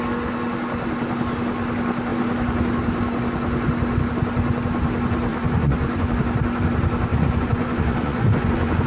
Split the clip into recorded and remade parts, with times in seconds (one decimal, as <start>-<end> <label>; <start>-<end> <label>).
0.0-5.3 recorded; 5.3-6.1 remade; 6.1-7.1 recorded; 7.1-8.9 remade